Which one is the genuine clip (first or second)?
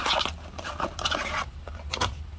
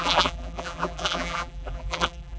first